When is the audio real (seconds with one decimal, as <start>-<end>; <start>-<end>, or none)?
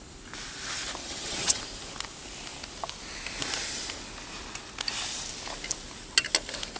0.0-1.0; 1.6-6.8